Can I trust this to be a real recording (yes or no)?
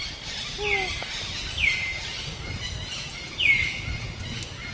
yes